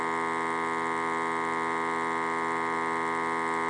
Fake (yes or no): no